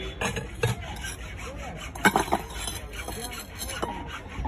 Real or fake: real